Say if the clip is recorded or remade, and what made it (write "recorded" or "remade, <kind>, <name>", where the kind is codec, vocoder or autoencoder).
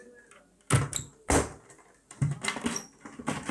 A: recorded